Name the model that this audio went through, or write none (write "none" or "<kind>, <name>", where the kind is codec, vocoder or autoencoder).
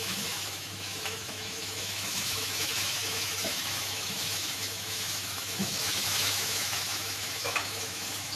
autoencoder, DAC-VAE